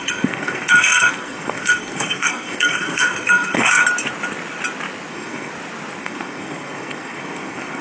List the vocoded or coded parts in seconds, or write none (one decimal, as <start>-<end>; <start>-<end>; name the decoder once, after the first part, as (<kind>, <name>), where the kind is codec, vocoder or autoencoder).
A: 0.0-3.8 (codec, SNAC); 5.1-5.5; 6.0-7.8